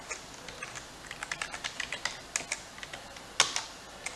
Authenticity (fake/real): real